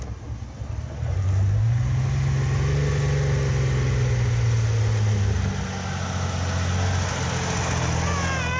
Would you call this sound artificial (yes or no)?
no